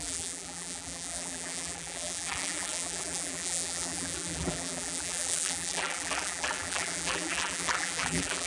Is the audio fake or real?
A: fake